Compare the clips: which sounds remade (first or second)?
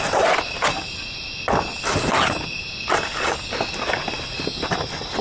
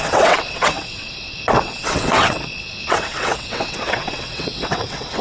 second